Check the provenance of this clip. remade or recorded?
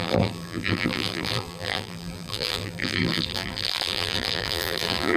remade